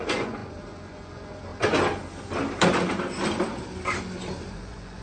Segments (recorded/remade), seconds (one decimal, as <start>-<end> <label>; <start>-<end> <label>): 0.0-1.5 remade; 1.5-4.5 recorded; 4.5-5.0 remade